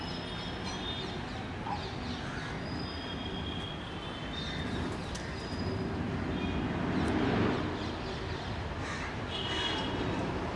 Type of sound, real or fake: real